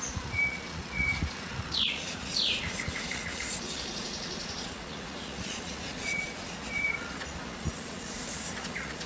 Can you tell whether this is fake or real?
fake